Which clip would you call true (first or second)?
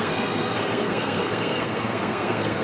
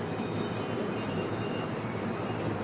second